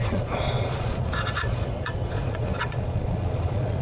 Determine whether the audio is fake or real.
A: fake